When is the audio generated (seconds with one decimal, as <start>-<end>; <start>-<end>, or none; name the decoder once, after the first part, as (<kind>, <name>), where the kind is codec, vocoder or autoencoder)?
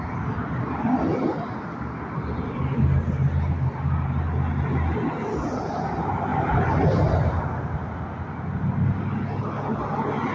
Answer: 6.3-7.1 (vocoder, BigVGAN v2)